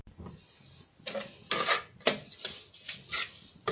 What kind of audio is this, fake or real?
real